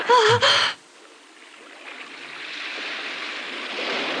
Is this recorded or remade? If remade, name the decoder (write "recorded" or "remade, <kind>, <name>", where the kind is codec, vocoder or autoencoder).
recorded